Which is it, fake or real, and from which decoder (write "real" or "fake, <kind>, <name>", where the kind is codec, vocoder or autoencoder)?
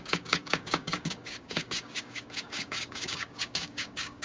fake, codec, DAC